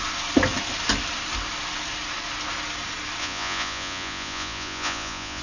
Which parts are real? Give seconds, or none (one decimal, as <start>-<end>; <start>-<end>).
0.0-3.2